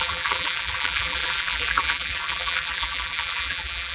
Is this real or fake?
fake